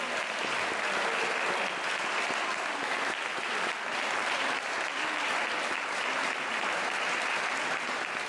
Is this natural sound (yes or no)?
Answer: yes